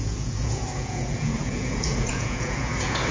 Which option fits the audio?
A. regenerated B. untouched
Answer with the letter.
A